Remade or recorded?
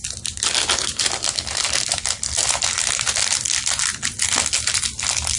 recorded